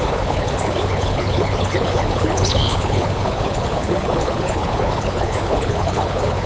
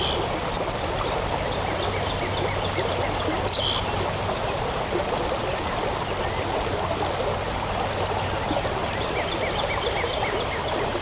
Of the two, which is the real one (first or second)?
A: second